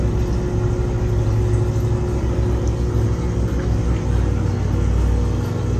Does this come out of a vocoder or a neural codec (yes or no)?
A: no